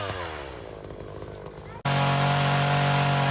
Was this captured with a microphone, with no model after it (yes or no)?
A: yes